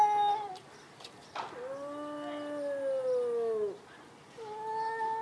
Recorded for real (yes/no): yes